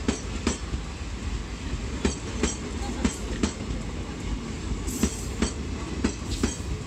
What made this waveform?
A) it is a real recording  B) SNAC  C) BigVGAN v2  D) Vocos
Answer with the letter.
A